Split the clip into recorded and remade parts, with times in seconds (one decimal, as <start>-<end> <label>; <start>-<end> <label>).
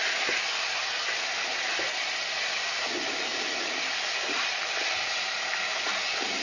0.0-6.4 recorded